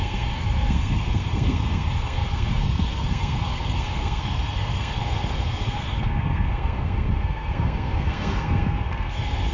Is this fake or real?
fake